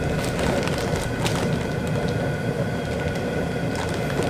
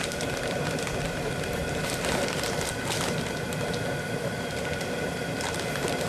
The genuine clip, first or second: first